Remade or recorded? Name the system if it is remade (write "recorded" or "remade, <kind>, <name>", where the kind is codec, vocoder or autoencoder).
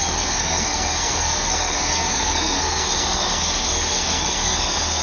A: remade, codec, SNAC